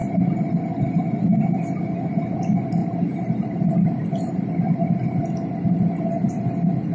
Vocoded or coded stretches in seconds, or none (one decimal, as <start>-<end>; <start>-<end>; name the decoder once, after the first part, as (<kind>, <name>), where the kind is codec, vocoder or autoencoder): 0.0-0.5 (vocoder, BigVGAN v2); 2.8-4.7

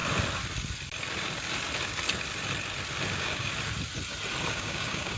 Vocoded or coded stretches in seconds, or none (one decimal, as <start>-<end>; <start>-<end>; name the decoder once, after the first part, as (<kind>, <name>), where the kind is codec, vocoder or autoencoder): 3.1-3.5 (codec, DAC); 4.5-5.2